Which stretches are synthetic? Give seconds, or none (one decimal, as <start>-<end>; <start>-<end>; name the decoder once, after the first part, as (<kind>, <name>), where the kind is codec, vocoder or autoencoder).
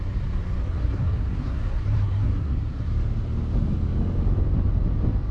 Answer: 0.6-2.9 (codec, SNAC)